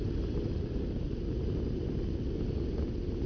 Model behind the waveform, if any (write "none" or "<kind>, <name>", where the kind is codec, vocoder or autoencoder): none